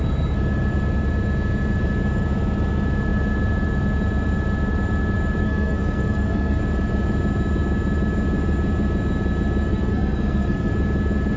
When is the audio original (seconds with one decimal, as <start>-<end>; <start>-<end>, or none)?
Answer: 0.0-5.4; 6.6-9.7; 10.7-11.4